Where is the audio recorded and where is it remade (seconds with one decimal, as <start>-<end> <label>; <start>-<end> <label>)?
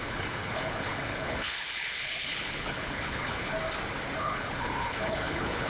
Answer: 0.0-3.5 remade; 3.5-4.2 recorded; 4.2-5.7 remade